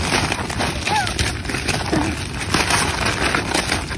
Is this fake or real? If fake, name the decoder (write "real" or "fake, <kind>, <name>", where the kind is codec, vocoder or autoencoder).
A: real